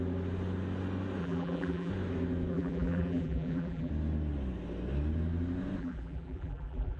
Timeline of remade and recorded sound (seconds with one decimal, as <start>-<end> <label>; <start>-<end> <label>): 0.0-1.2 recorded; 1.2-1.9 remade; 1.9-2.5 recorded; 2.5-3.9 remade; 3.9-5.8 recorded; 5.8-7.0 remade